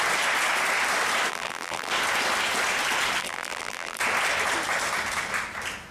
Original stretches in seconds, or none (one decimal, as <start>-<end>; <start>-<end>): 0.0-1.3; 1.9-3.2; 4.0-5.9